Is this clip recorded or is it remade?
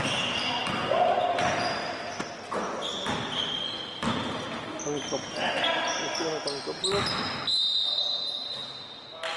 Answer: recorded